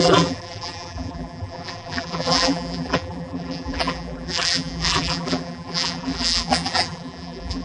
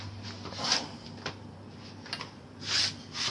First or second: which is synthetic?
first